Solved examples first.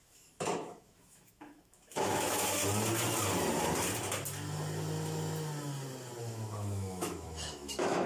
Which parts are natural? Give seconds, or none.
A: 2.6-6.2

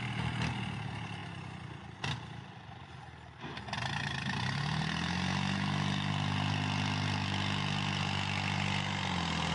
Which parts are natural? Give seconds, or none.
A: 0.0-9.5

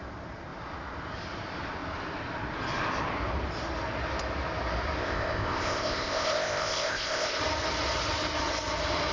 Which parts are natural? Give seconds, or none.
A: 0.0-5.0; 7.4-9.1

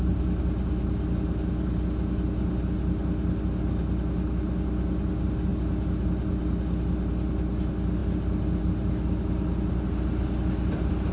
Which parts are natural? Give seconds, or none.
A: 0.0-11.1